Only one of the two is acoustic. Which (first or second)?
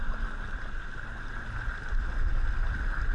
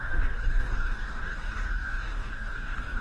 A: first